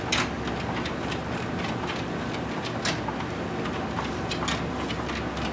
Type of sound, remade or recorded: recorded